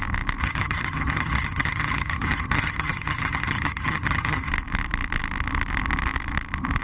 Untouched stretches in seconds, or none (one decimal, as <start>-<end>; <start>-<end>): 0.0-0.4; 4.5-6.8